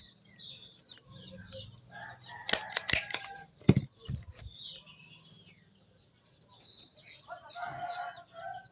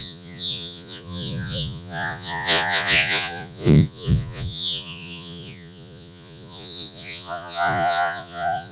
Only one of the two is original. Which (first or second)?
first